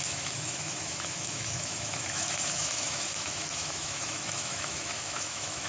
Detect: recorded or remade remade